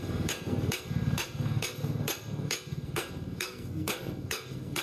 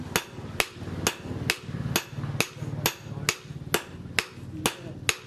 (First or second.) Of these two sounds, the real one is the second